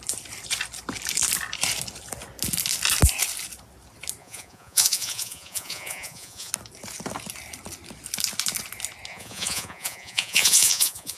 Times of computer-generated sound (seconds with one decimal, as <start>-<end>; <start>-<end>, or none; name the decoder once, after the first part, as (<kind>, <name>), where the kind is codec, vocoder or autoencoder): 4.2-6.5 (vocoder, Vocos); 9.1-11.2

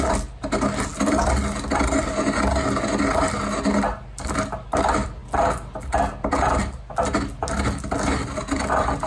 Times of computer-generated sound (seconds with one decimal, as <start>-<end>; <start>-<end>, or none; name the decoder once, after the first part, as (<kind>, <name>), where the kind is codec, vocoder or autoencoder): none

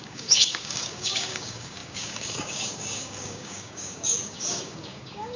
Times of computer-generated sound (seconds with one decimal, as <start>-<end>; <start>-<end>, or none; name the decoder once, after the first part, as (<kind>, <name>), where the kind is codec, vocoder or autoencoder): 0.0-5.4 (codec, DAC)

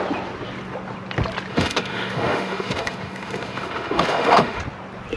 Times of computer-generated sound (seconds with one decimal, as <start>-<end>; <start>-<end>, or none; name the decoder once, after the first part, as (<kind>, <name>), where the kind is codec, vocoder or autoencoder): 1.5-4.6 (autoencoder, DAC-VAE)

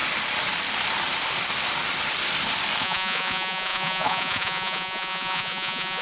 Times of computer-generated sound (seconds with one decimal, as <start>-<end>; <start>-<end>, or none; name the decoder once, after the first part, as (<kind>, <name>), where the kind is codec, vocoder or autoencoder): 2.8-6.0 (vocoder, Vocos)

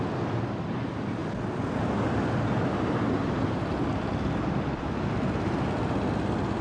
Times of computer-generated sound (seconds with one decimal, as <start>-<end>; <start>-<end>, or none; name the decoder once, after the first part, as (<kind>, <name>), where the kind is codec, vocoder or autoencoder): none